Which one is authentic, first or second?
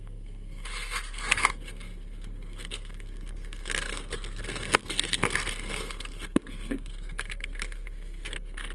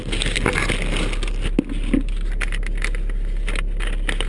second